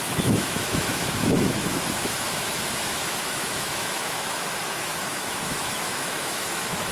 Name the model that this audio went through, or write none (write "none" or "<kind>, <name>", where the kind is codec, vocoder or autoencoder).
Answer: autoencoder, DAC-VAE